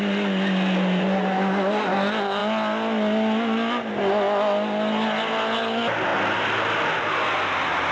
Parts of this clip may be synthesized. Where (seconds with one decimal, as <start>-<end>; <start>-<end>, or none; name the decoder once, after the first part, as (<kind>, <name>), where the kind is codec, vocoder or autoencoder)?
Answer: none